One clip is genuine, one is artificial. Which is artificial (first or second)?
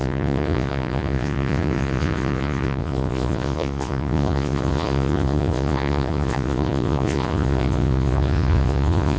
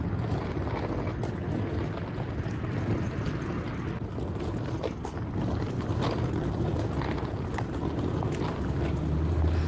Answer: first